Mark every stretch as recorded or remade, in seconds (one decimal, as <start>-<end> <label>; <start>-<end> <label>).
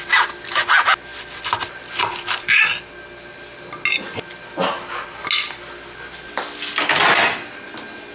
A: 0.0-8.1 recorded